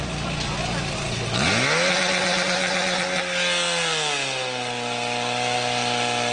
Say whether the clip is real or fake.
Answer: real